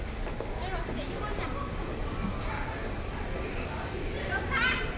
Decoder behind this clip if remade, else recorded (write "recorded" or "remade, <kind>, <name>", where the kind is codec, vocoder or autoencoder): recorded